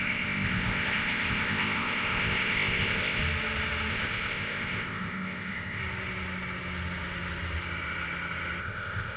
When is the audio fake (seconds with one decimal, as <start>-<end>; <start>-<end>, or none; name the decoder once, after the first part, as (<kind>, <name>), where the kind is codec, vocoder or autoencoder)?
0.0-3.2 (codec, ZipCodec); 3.9-5.8; 8.6-9.2